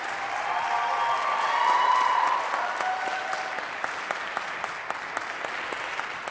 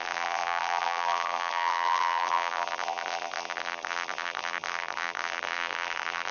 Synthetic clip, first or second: second